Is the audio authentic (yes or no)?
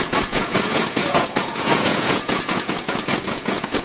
no